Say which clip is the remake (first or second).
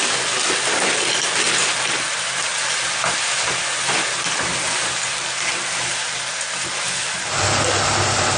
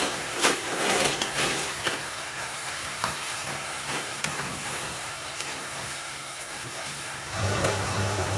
second